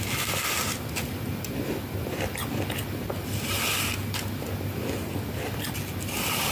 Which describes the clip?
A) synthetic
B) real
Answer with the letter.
B